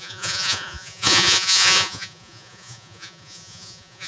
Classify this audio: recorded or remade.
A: remade